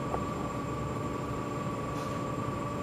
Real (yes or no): no